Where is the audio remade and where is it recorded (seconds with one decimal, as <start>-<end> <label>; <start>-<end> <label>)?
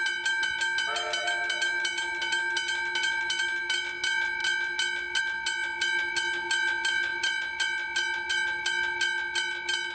0.0-9.9 recorded